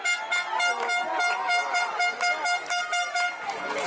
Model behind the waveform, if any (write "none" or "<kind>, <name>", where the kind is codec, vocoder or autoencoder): none